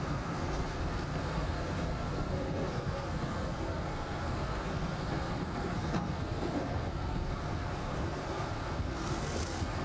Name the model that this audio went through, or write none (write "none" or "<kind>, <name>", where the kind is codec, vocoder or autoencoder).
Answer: codec, SNAC